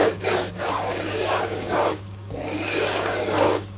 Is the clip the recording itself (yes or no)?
no